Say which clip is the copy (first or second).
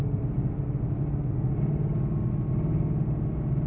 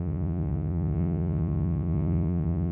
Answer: second